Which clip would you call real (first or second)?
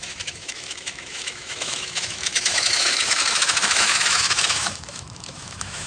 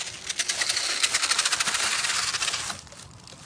second